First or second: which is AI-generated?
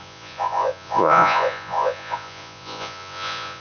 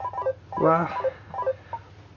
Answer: first